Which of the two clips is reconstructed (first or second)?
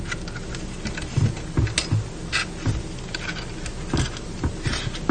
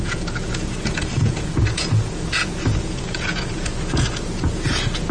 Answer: second